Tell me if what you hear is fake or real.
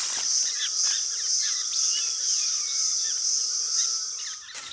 real